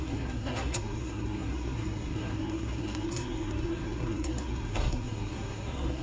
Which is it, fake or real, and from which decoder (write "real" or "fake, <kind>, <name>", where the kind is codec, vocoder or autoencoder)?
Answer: fake, codec, SNAC